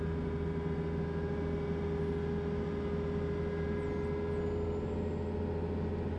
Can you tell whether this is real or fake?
real